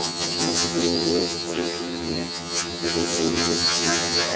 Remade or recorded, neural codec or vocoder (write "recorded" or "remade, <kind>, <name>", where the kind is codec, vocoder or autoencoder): remade, vocoder, HiFi-GAN